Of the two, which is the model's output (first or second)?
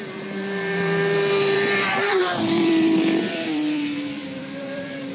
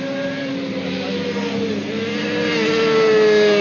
first